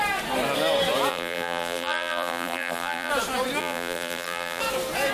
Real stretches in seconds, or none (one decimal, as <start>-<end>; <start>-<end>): 0.0-1.1; 3.1-3.6; 4.6-5.1